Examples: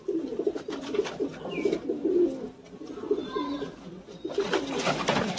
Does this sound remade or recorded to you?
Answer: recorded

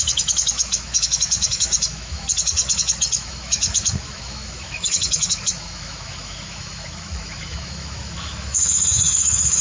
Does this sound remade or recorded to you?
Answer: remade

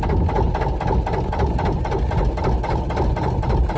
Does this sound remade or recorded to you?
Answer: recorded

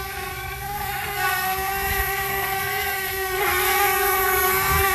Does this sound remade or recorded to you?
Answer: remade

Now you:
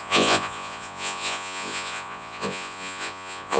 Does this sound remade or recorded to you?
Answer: remade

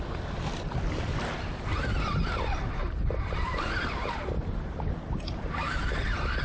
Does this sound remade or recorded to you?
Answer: recorded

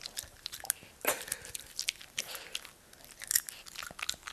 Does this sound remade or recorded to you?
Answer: recorded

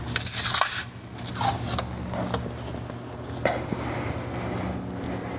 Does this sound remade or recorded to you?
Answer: recorded